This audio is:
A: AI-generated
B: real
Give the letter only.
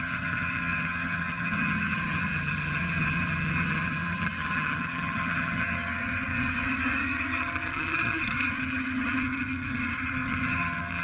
A